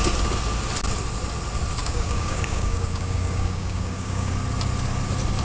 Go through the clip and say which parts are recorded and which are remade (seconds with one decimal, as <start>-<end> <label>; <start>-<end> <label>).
0.0-1.8 recorded; 1.8-4.3 remade; 4.3-5.4 recorded